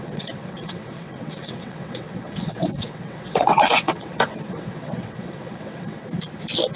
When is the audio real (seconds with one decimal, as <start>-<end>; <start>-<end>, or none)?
6.0-6.8